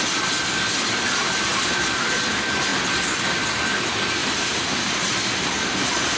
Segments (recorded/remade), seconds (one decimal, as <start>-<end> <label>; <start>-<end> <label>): 0.0-1.5 recorded; 1.5-2.3 remade; 2.3-4.2 recorded; 4.2-4.9 remade; 4.9-6.2 recorded